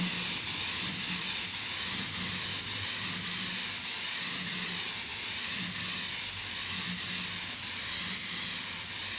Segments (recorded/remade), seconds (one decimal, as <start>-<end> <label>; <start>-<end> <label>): 0.0-9.2 recorded